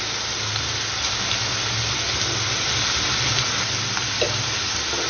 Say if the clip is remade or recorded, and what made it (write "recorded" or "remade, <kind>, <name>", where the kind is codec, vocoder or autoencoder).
recorded